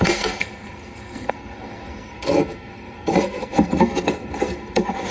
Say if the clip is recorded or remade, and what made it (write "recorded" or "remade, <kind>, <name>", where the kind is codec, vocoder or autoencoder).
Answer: remade, codec, SNAC